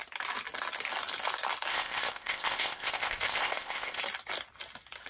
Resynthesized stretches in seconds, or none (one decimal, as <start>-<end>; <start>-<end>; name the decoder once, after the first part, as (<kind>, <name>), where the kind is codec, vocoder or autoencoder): 1.7-4.0 (codec, ZipCodec)